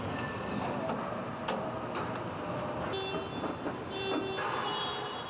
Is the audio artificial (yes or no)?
no